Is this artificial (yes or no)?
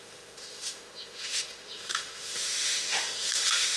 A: yes